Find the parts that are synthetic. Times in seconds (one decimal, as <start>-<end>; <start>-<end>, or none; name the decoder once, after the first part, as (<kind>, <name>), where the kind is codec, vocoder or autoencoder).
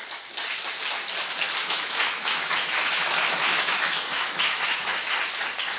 1.6-5.1 (autoencoder, DAC-VAE)